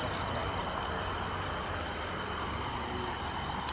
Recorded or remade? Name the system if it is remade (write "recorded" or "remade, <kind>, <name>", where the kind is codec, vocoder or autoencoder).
recorded